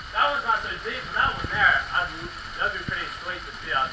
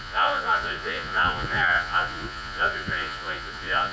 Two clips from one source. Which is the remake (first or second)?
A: second